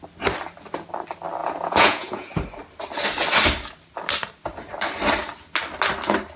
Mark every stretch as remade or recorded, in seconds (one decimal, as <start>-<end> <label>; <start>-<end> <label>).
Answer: 0.0-1.4 recorded; 1.4-2.3 remade; 2.3-6.4 recorded

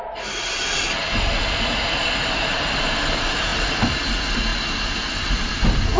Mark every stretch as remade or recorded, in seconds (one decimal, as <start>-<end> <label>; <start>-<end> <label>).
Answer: 0.0-6.0 recorded

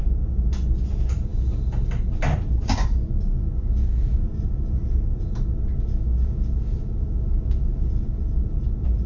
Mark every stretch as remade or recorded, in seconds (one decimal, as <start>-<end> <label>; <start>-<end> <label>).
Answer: 0.0-9.1 recorded

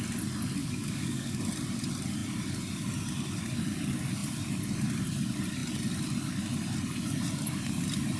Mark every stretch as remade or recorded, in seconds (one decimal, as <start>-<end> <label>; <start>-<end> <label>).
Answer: 0.0-0.6 recorded; 0.6-1.4 remade; 1.4-8.2 recorded

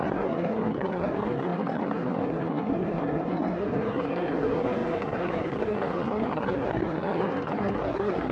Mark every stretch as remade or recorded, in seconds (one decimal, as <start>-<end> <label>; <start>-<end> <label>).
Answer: 0.0-8.3 remade

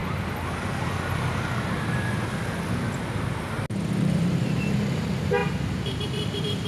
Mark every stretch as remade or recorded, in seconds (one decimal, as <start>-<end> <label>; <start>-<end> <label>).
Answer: 0.0-4.0 recorded; 4.0-6.7 remade

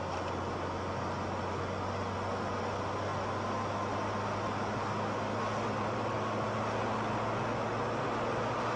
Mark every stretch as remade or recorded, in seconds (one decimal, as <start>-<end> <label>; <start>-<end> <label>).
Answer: 0.0-8.8 recorded

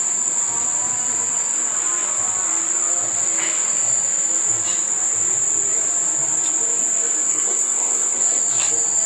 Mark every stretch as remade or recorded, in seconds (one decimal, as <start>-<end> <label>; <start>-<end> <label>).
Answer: 0.0-7.3 recorded; 7.3-8.4 remade; 8.4-9.1 recorded